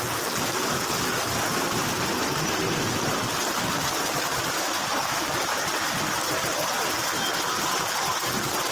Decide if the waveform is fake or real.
real